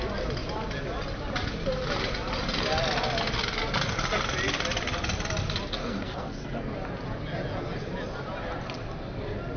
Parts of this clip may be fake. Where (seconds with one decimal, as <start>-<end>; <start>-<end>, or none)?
5.8-6.7